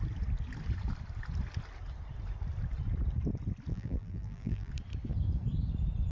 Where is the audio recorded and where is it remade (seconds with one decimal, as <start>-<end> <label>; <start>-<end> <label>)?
0.0-3.7 recorded; 3.7-4.7 remade; 4.7-6.1 recorded